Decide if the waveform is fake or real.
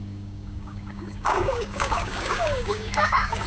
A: fake